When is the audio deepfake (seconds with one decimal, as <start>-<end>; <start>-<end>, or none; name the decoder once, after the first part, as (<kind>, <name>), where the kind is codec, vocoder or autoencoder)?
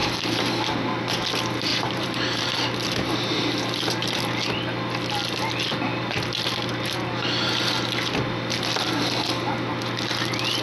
0.0-0.6 (vocoder, BigVGAN v2); 1.7-2.4